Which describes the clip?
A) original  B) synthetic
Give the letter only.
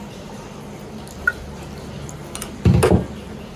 A